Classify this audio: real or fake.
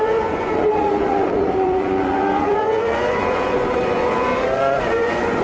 fake